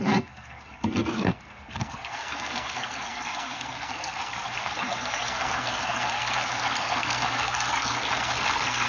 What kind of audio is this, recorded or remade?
remade